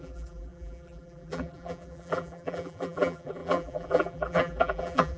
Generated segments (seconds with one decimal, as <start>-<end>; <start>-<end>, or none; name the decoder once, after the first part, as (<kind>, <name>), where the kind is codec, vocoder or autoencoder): 0.0-5.2 (vocoder, BigVGAN v2)